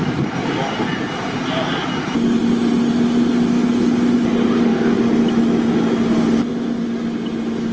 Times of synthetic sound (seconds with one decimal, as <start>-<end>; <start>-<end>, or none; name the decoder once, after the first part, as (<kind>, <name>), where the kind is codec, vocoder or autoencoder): none